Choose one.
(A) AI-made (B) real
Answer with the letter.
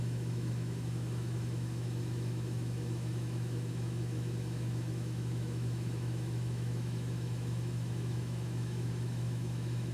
A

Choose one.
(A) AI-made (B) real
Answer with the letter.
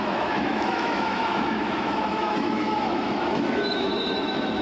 A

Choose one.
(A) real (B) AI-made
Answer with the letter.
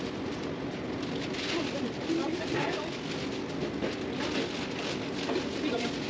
A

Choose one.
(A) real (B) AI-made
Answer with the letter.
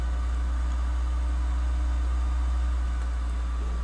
A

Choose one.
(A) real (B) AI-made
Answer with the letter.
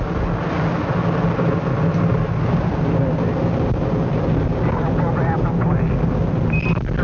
A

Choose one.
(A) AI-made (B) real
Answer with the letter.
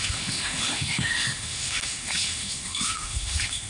A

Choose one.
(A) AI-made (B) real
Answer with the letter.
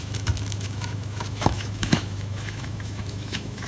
A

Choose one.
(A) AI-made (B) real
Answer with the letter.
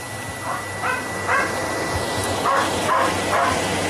B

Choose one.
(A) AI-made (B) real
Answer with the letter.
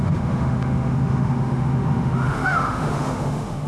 A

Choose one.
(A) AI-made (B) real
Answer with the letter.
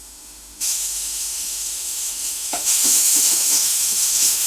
A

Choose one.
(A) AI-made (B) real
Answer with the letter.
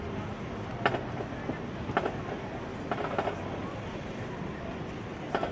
B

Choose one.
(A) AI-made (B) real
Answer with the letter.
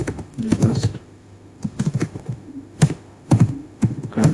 A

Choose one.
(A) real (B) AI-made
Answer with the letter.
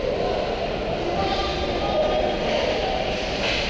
A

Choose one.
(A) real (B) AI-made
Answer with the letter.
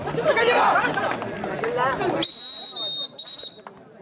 A